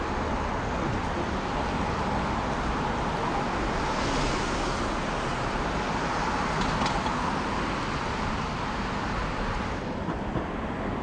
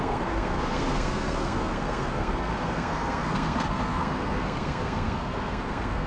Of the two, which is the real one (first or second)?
first